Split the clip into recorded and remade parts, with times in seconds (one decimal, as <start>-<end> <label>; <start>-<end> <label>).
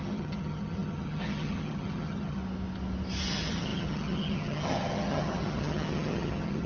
0.0-2.4 remade; 2.4-3.3 recorded; 3.3-6.7 remade